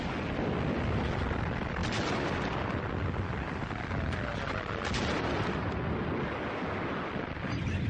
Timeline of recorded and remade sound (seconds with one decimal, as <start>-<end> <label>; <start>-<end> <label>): 0.0-7.9 recorded